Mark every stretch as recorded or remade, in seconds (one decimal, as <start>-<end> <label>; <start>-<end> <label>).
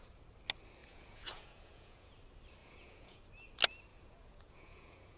0.0-0.8 recorded; 0.8-2.1 remade; 2.1-2.6 recorded; 2.6-3.2 remade; 3.2-3.9 recorded; 3.9-5.2 remade